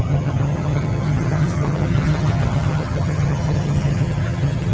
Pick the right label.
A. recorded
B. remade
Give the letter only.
B